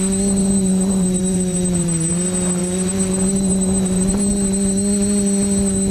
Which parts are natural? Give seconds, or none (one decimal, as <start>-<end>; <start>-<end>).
0.0-0.4; 2.1-2.6; 4.3-5.9